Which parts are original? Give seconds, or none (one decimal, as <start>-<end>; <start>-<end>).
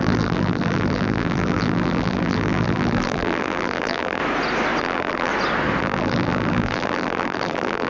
4.2-4.8; 5.3-5.8